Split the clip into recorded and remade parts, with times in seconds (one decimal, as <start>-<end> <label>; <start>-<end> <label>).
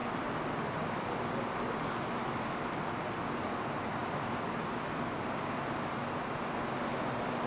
0.0-2.1 remade; 2.1-4.0 recorded; 4.0-5.9 remade; 5.9-7.5 recorded